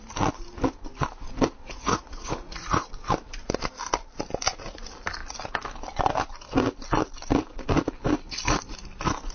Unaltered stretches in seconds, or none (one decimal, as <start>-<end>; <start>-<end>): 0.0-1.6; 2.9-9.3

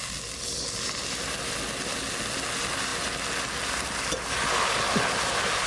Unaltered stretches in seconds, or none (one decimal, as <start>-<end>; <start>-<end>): 0.0-5.7

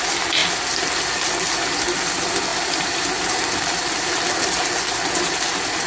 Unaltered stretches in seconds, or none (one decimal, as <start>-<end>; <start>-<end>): 0.0-5.9

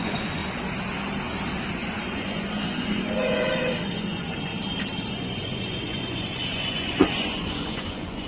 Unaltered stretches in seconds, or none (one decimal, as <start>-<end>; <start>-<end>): 0.4-1.7; 4.5-5.1

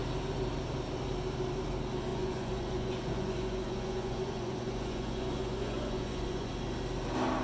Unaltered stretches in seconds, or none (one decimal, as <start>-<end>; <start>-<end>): 0.0-2.1; 6.5-7.4